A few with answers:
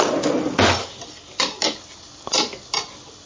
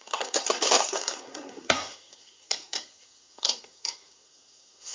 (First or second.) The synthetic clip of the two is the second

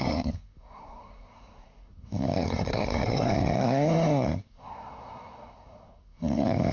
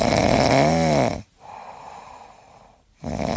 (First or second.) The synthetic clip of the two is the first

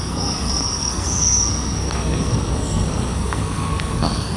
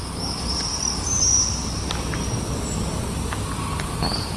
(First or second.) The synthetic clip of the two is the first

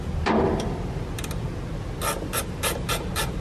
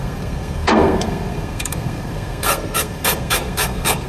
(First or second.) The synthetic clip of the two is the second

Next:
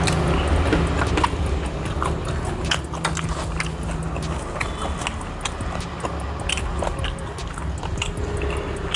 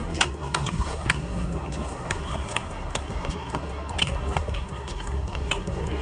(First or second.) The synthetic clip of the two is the second